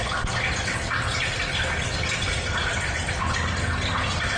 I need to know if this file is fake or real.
real